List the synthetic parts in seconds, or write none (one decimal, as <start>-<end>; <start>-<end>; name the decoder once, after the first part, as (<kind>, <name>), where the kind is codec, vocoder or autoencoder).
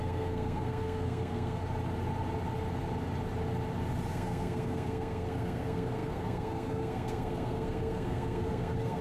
0.0-1.6 (codec, SNAC); 4.1-9.0